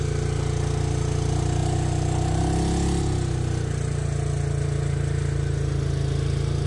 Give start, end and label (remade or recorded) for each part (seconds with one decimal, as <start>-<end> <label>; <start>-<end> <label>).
0.0-6.7 recorded